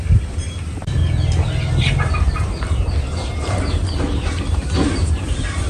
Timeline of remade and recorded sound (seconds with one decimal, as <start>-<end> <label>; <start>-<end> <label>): 0.0-1.0 remade; 1.0-1.9 recorded; 1.9-5.7 remade